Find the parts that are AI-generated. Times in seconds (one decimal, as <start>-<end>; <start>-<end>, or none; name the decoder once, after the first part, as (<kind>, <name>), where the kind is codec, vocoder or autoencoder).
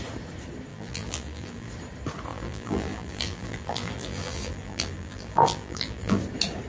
0.7-1.7 (vocoder, BigVGAN v2); 2.3-6.2